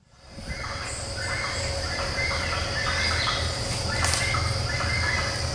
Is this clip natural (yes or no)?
yes